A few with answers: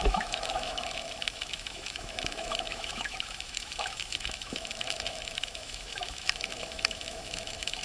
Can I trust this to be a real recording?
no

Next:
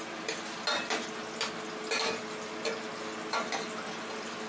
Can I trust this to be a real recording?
yes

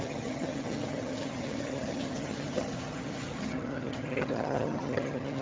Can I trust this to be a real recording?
no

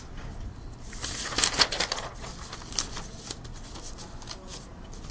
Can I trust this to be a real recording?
yes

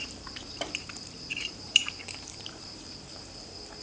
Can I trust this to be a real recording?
no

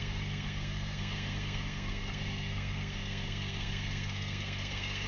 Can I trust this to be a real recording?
no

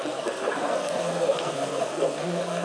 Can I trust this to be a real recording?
no